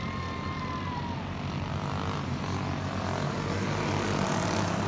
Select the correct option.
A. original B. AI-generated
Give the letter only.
A